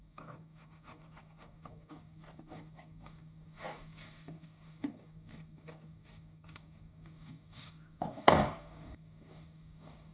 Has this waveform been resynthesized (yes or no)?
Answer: yes